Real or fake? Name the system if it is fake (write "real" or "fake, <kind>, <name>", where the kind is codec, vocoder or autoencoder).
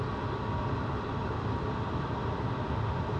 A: real